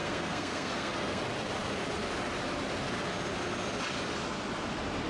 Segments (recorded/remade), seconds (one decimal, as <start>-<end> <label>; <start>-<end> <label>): 0.0-1.2 remade; 1.2-5.1 recorded